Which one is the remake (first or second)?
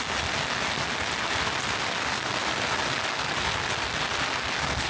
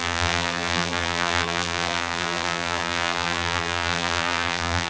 second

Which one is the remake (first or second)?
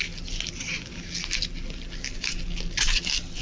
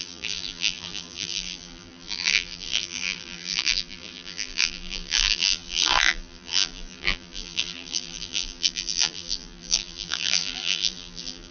second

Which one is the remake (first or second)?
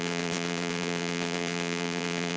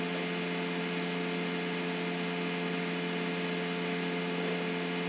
first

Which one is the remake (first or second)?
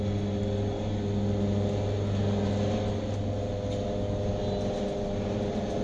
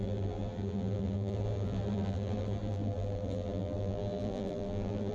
second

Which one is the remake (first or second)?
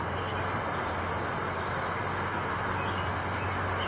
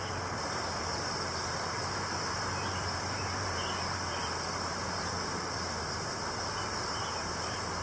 second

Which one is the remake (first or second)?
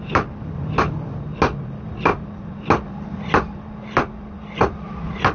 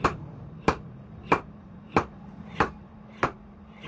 second